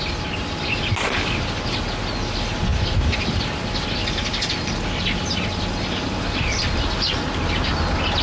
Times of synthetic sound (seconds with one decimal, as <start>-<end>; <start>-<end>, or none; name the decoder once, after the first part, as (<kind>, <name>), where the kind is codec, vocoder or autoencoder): none